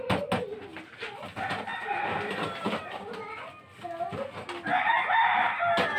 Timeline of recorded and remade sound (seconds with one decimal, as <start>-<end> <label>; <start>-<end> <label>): 0.0-6.0 recorded